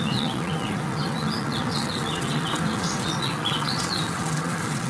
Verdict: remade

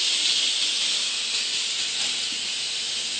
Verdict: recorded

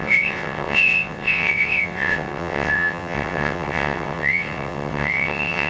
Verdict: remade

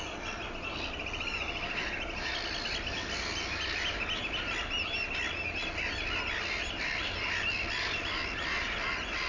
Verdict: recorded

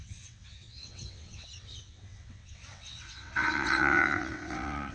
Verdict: remade